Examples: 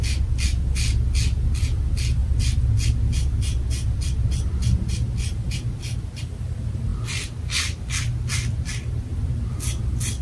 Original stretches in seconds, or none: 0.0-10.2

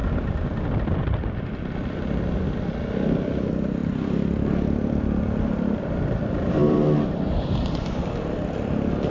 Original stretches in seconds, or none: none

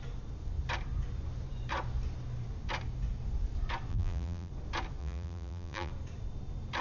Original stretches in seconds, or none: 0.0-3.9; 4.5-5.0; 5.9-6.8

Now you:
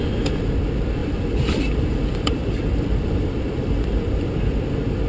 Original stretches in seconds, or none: 0.0-1.0; 4.1-5.1